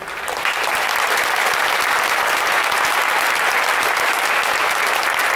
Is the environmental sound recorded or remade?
recorded